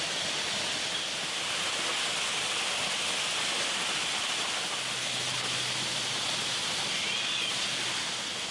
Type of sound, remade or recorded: recorded